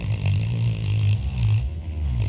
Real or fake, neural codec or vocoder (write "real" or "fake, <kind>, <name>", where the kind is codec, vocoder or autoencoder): real